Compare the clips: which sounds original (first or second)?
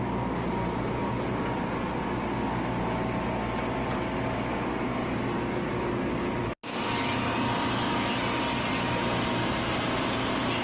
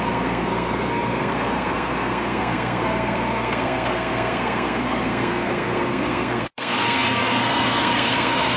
first